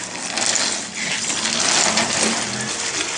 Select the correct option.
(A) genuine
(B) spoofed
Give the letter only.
A